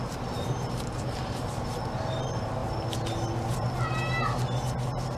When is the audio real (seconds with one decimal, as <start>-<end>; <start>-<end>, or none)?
0.0-5.2